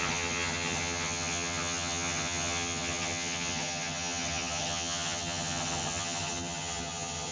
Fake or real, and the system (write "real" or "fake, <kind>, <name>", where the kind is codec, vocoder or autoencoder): fake, vocoder, HiFi-GAN